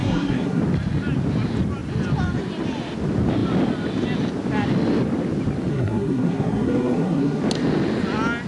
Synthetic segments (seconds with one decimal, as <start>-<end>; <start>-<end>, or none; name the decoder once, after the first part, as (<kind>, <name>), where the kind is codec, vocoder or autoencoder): 0.0-0.6 (codec, SNAC); 5.7-7.4